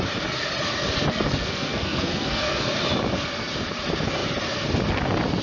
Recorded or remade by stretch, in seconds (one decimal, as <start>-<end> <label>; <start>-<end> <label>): 0.0-1.1 recorded; 1.1-2.7 remade; 2.7-5.4 recorded